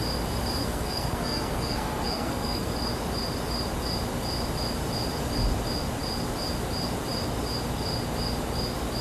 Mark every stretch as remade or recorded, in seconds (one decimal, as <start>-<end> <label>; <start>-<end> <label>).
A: 0.0-0.6 recorded; 0.6-2.7 remade; 2.7-9.0 recorded